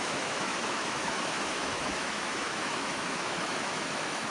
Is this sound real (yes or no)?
no